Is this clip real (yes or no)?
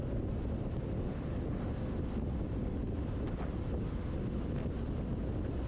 yes